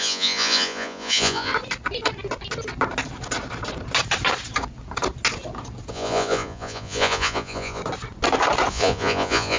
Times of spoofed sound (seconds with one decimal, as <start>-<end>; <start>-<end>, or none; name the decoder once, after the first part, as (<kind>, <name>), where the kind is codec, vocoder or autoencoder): 0.0-1.5 (vocoder, Vocos); 5.9-7.8; 8.7-9.6

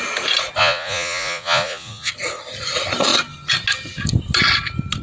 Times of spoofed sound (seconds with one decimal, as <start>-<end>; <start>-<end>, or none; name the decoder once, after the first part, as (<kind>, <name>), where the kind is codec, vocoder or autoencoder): 0.6-2.1 (vocoder, Vocos)